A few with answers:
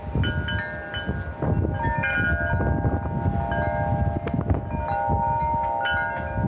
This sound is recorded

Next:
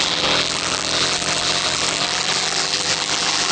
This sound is remade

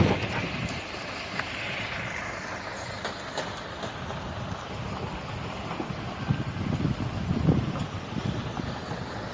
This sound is recorded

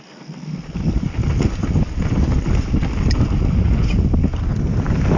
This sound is recorded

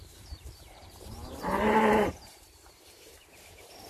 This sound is remade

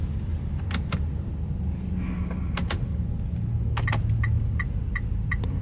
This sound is recorded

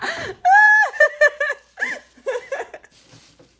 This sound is remade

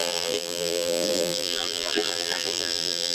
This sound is remade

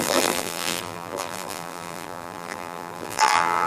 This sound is remade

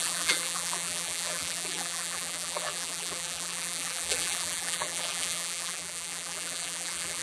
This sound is remade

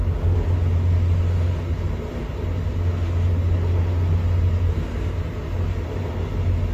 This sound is recorded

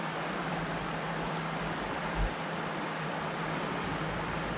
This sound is remade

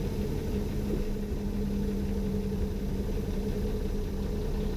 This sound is recorded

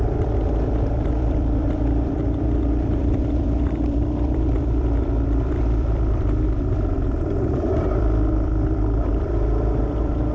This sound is remade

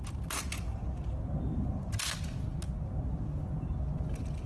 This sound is recorded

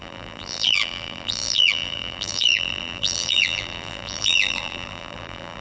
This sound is remade